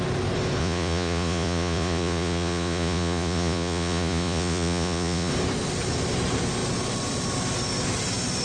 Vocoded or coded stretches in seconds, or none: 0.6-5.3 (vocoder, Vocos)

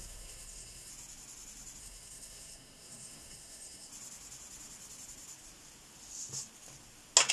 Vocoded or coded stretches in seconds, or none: 0.0-0.9 (codec, SNAC); 1.8-3.9

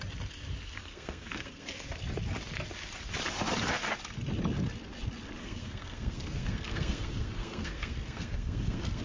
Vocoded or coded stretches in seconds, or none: 0.9-1.7 (codec, SNAC); 5.4-9.0

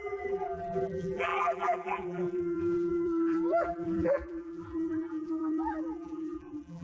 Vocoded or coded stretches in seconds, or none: 0.0-6.8 (vocoder, BigVGAN v2)

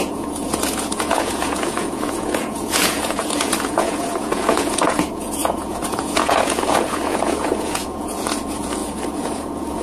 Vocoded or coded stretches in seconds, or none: 0.0-9.8 (vocoder, Vocos)